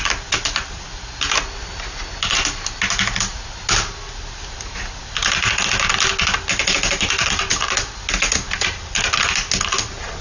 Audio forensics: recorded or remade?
recorded